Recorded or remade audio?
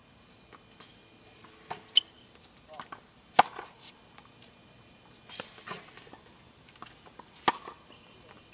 recorded